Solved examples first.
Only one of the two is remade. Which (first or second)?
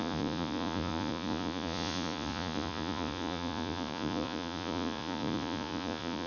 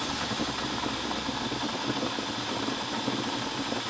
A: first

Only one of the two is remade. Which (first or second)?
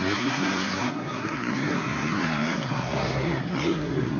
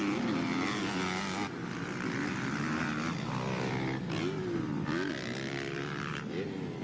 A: first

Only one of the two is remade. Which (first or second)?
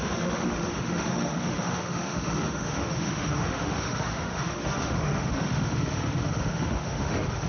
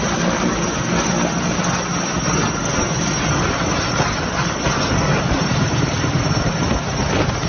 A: first